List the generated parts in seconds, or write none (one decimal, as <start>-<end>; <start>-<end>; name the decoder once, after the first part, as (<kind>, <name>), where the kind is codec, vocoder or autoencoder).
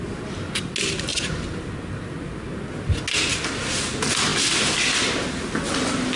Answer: none